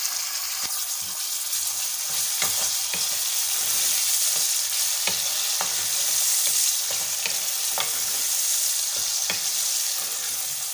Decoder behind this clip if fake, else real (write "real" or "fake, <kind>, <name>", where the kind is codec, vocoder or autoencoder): real